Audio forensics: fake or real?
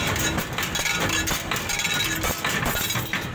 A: real